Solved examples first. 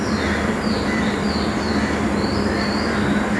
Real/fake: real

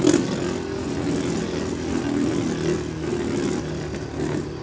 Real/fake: real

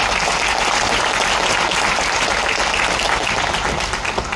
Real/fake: real